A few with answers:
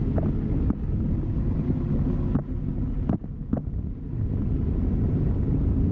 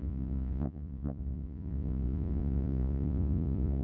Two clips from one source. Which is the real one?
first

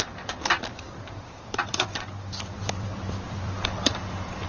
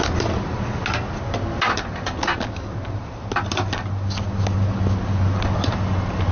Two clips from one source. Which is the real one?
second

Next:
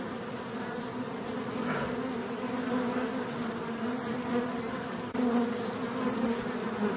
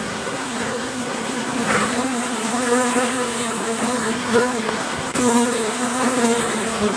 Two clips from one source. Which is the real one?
first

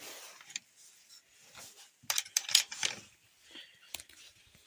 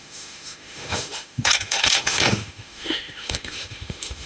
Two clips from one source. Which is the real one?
first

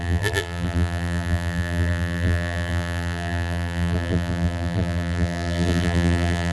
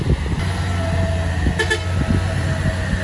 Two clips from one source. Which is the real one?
second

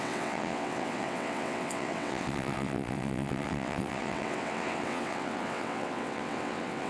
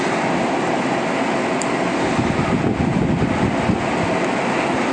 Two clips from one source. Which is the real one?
second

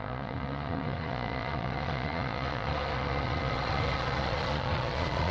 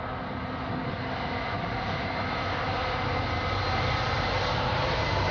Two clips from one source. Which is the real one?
second